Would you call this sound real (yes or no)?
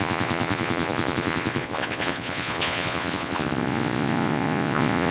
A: no